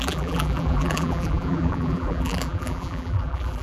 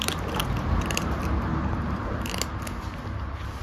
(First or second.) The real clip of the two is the second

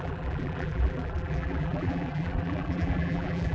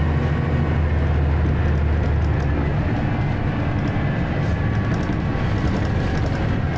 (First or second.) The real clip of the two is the second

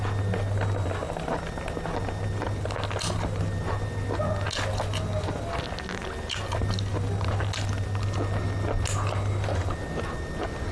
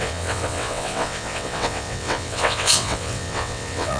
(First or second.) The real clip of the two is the first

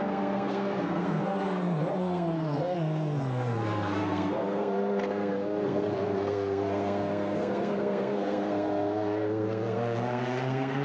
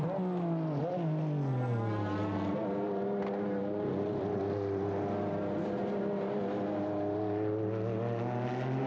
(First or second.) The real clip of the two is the second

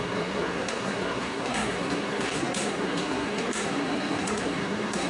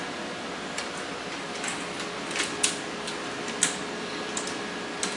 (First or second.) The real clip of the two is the second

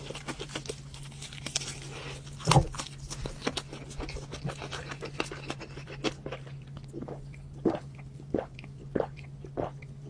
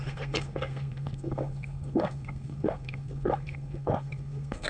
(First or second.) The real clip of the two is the first